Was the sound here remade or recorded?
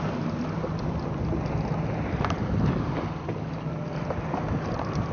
recorded